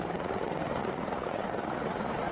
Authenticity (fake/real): fake